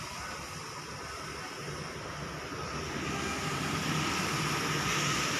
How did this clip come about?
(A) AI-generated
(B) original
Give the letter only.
B